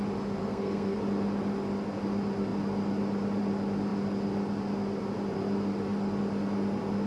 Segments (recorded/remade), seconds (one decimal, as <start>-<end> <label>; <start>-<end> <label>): 0.0-0.4 recorded; 0.4-1.0 remade; 1.0-7.1 recorded